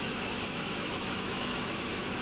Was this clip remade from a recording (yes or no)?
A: yes